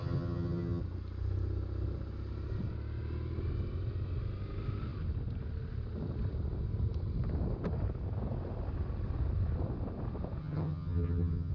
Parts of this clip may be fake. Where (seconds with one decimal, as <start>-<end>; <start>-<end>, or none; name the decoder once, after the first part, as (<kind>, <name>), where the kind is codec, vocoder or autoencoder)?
0.0-0.8 (vocoder, HiFi-GAN); 10.4-11.5